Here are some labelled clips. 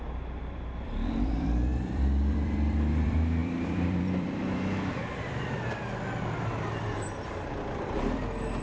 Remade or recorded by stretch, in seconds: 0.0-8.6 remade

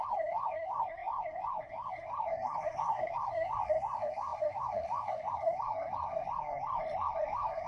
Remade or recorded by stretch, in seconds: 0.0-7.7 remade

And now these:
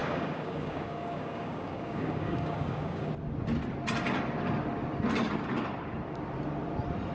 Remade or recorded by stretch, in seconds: 0.0-3.1 remade; 3.1-7.1 recorded